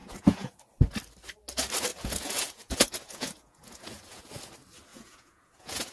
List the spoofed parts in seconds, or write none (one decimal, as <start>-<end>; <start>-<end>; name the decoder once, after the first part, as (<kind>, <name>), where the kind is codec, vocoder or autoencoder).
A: 0.0-0.6 (vocoder, Vocos); 1.9-4.3; 4.9-5.9